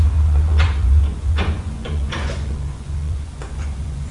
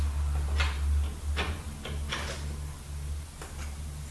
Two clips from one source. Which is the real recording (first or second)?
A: second